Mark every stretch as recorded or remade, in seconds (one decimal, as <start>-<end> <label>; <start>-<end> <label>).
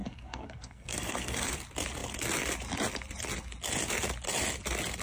0.0-1.5 remade; 1.5-5.0 recorded